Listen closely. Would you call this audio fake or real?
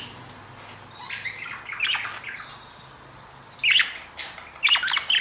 real